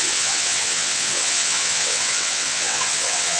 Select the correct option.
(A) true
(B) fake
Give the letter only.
B